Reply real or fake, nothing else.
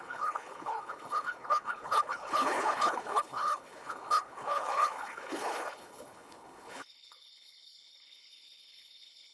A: fake